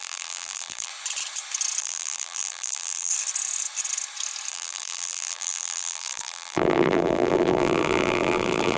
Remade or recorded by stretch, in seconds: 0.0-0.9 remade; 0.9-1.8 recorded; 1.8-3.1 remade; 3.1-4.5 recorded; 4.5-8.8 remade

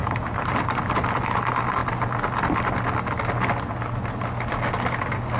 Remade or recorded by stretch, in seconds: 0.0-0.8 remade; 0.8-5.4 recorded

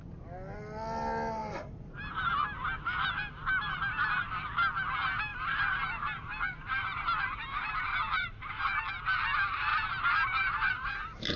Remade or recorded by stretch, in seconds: 0.0-1.4 recorded; 1.4-2.3 remade; 2.3-5.3 recorded; 5.3-8.6 remade; 8.6-9.7 recorded; 9.7-11.4 remade

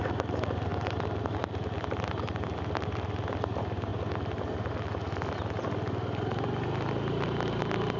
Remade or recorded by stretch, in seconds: 0.0-8.0 recorded

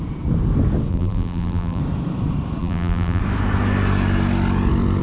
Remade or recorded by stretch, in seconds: 0.0-0.9 recorded; 0.9-1.8 remade; 1.8-2.6 recorded; 2.6-3.2 remade; 3.2-5.0 recorded